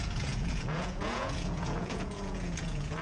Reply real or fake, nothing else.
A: fake